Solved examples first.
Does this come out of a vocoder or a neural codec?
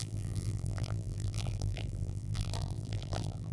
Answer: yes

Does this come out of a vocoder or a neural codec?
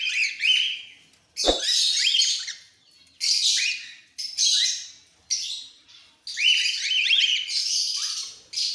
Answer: no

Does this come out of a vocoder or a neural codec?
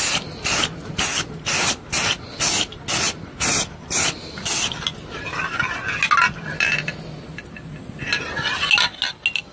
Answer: no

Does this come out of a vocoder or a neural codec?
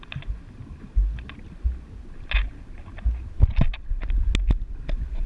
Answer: no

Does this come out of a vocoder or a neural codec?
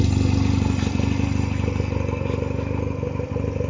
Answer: no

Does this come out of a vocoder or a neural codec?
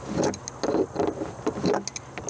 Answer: no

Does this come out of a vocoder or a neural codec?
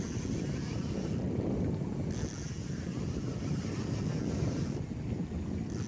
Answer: no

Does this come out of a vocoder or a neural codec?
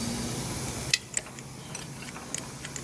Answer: no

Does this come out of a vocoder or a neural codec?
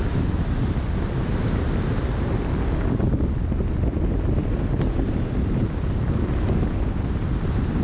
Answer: no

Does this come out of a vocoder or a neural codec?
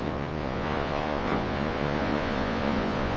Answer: yes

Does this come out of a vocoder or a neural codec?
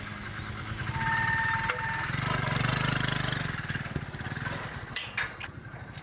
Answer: no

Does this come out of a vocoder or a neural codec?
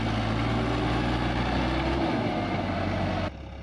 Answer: no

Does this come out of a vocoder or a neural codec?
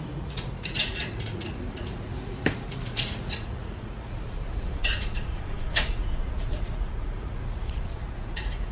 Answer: yes